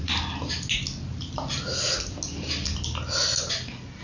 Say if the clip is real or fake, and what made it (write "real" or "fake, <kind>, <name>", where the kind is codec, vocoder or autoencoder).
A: real